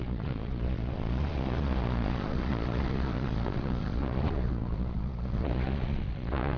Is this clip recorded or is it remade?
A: remade